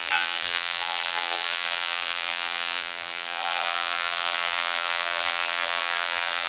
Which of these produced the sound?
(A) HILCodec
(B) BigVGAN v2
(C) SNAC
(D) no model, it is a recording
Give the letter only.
B